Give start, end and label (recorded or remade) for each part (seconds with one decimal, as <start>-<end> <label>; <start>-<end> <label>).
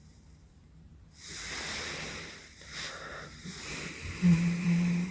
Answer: 0.0-5.1 remade